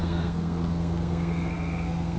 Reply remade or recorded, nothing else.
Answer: remade